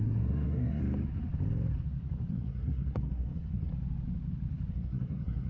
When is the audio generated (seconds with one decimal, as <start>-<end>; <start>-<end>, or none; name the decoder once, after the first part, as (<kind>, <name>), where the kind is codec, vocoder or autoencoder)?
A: 0.0-0.8 (codec, SNAC); 2.3-3.7; 4.7-5.5